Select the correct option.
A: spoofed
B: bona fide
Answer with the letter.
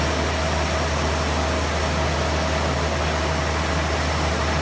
B